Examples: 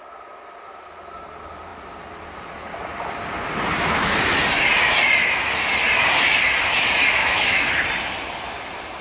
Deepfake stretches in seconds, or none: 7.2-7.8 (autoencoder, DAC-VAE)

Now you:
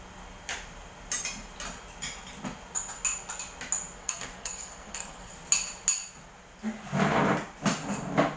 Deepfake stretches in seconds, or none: 4.0-5.3 (codec, SNAC)

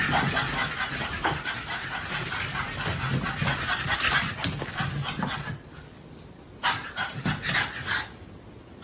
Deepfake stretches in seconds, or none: 0.6-2.3 (vocoder, BigVGAN v2); 6.6-7.2

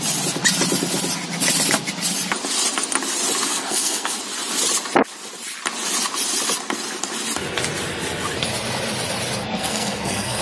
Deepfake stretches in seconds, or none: 3.5-4.2 (codec, SNAC); 9.4-10.4

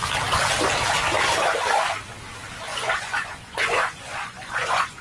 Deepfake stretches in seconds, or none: 2.7-5.0 (vocoder, Vocos)

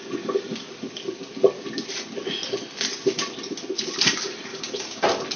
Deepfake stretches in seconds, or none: 4.5-5.0 (codec, DAC)

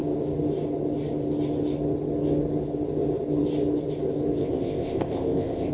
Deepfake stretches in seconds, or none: 4.4-5.7 (codec, ZipCodec)

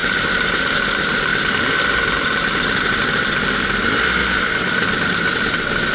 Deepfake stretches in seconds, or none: 0.0-0.9 (vocoder, BigVGAN v2); 1.3-3.6; 4.2-5.9